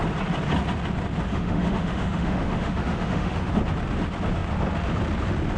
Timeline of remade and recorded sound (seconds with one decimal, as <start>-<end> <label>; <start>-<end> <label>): 0.0-1.3 recorded; 1.3-3.5 remade; 3.5-5.6 recorded